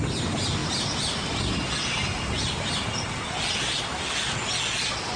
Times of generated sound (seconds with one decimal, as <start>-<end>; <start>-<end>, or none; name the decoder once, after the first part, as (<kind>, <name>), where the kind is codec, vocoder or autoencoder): none